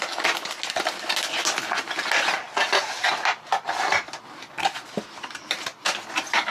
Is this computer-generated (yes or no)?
no